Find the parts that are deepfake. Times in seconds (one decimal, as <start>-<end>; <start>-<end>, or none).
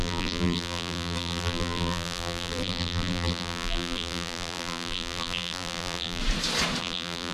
0.0-6.2; 6.8-7.3